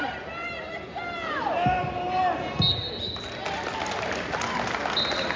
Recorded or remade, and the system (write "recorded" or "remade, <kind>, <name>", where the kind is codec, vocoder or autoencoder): recorded